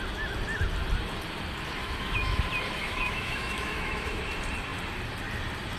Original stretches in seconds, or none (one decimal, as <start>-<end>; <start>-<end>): 0.0-1.8; 2.4-2.8; 4.2-5.8